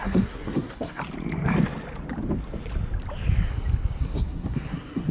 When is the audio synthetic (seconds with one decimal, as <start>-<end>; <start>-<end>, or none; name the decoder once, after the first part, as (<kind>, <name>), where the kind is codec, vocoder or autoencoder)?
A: 0.0-1.0 (codec, SNAC); 4.0-5.1